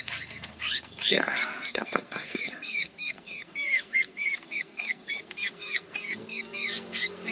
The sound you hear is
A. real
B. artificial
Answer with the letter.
B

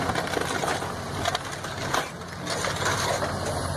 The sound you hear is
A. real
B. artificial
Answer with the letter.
A